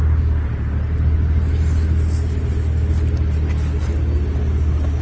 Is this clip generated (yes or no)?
no